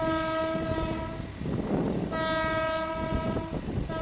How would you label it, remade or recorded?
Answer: recorded